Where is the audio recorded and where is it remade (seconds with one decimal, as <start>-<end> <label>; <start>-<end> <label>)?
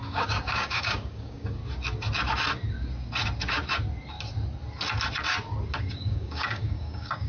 0.0-1.6 remade; 1.6-5.8 recorded; 5.8-7.3 remade